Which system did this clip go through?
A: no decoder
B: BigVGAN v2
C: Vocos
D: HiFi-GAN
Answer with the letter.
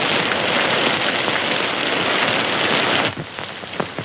A